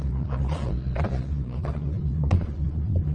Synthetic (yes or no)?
yes